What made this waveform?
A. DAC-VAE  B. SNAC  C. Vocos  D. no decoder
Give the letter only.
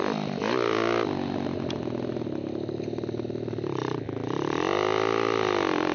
D